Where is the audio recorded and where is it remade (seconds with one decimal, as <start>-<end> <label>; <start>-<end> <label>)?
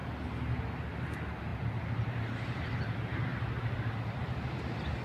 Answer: 0.0-1.5 recorded; 1.5-4.5 remade; 4.5-5.0 recorded